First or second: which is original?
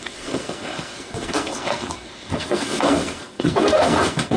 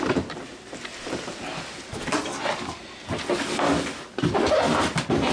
second